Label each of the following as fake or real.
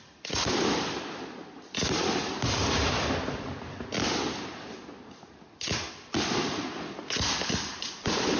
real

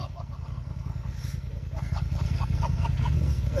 fake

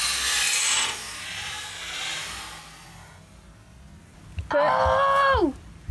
real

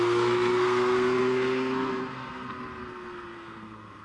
fake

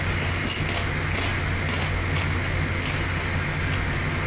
real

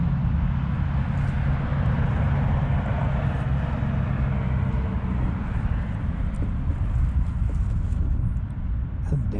real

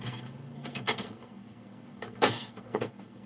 fake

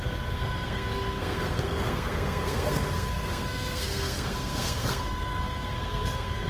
fake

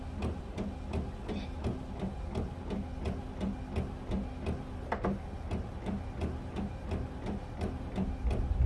real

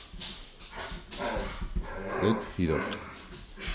real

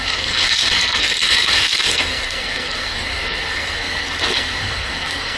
fake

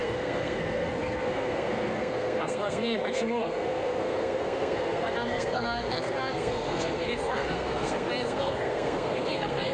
fake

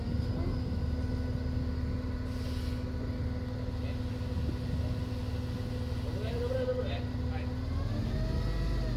real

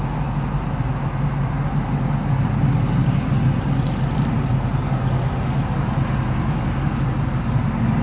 real